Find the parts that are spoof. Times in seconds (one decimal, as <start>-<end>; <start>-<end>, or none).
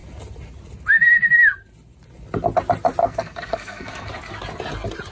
3.0-4.1